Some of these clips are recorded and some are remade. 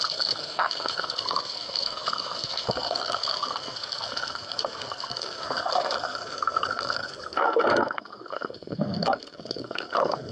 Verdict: remade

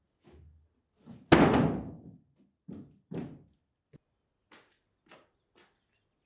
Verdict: recorded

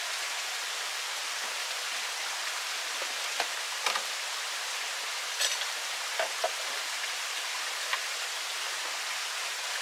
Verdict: recorded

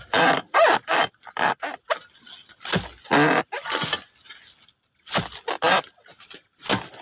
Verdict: recorded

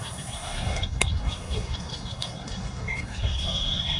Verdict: remade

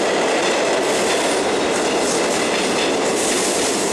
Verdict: recorded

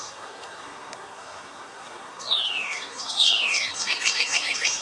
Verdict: remade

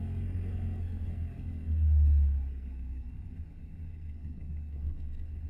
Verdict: remade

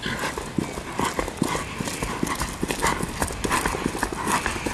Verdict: recorded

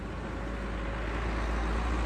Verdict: recorded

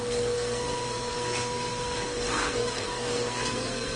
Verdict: remade